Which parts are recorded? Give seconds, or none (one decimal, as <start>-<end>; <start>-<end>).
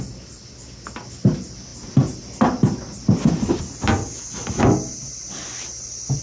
0.0-6.2